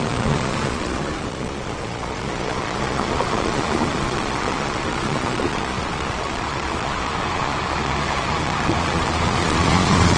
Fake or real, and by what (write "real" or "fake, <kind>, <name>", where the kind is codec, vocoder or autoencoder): fake, vocoder, Vocos